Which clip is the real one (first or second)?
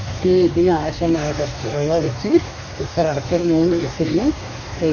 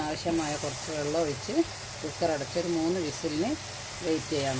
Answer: second